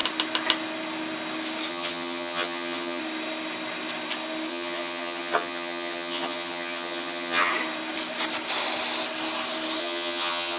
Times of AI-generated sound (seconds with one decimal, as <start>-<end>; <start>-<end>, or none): 1.7-3.0; 4.5-7.5; 9.8-10.6